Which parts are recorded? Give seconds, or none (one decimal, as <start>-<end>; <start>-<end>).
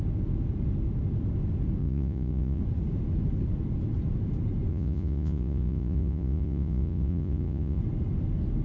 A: 0.0-1.8; 2.6-4.7; 7.8-8.6